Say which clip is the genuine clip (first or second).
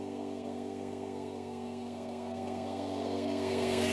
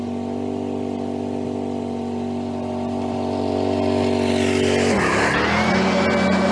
second